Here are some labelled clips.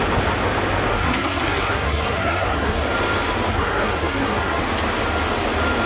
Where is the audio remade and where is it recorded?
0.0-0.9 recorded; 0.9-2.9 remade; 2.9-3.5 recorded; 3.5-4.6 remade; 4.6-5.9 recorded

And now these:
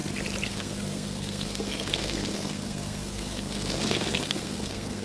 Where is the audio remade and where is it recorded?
0.0-0.5 recorded; 0.5-5.0 remade

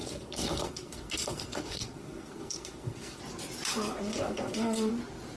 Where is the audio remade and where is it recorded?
0.0-3.2 remade; 3.2-3.7 recorded; 3.7-4.9 remade; 4.9-5.4 recorded

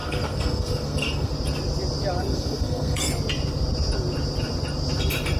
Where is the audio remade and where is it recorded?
0.0-1.3 remade; 1.3-2.2 recorded; 2.2-3.1 remade; 3.1-5.4 recorded